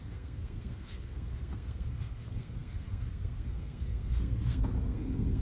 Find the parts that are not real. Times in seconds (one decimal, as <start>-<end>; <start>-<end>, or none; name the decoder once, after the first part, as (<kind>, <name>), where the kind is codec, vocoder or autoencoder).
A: 0.0-5.4 (codec, SNAC)